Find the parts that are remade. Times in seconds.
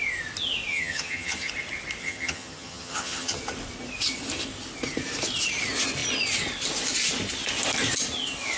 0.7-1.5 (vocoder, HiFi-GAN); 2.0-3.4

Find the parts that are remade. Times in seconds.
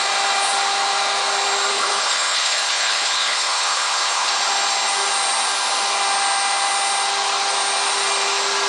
1.7-4.3 (codec, HILCodec)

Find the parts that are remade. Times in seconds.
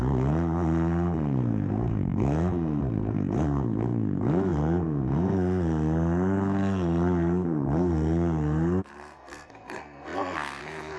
0.0-11.0 (codec, SNAC)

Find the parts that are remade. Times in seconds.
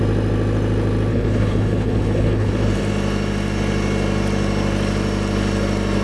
1.1-2.5 (codec, HILCodec)